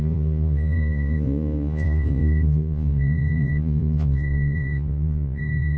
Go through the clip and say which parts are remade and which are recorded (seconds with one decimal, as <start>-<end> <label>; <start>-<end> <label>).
0.0-5.8 remade